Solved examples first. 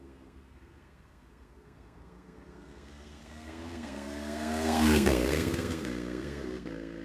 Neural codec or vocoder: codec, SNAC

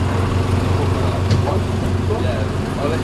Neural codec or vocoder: none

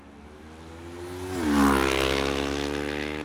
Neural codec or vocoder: none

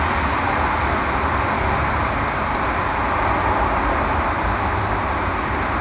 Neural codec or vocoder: none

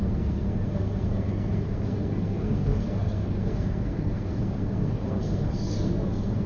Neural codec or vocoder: codec, SNAC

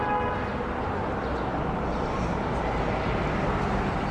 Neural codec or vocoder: none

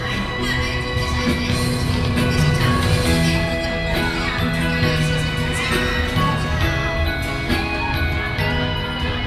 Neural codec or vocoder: none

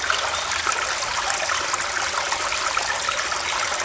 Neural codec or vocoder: none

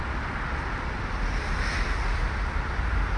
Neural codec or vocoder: none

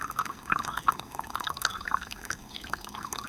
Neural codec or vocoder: codec, SNAC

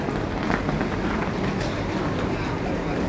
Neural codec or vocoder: none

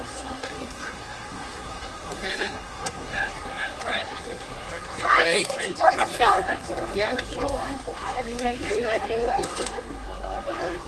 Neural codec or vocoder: codec, SNAC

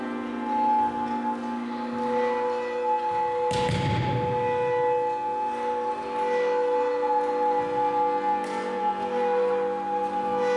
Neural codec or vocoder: none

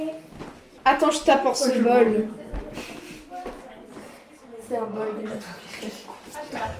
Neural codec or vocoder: none